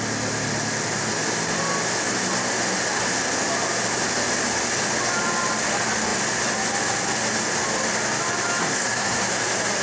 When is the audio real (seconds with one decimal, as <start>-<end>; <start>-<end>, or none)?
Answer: 0.0-8.6; 9.2-9.8